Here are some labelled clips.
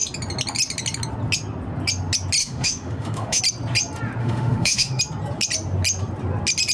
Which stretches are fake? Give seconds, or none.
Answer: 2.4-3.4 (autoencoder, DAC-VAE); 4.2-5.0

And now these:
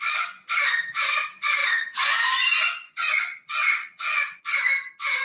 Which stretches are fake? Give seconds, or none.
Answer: 1.6-4.4 (vocoder, Vocos)

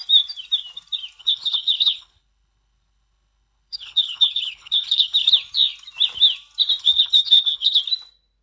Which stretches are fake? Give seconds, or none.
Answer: 1.2-5.3 (codec, HILCodec); 6.8-7.8

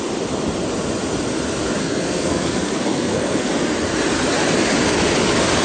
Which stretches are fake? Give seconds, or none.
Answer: 1.8-3.5 (codec, SNAC)

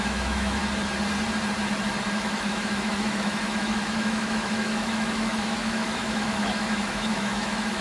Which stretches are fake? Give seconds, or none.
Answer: 0.0-0.6 (autoencoder, DAC-VAE); 2.1-7.8